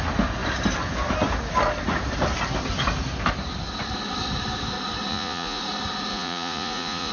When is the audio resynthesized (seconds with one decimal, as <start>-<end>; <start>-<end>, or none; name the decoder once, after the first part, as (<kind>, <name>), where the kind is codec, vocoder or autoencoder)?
5.1-5.6 (vocoder, Vocos); 6.1-7.1